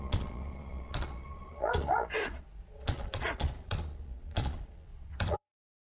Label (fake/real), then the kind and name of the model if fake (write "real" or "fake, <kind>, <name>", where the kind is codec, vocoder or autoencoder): fake, vocoder, Vocos